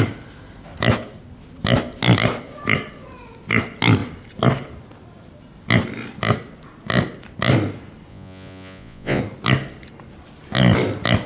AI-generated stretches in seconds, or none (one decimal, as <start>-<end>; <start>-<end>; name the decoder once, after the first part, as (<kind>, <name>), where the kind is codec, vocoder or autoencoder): 8.1-9.2 (vocoder, Vocos)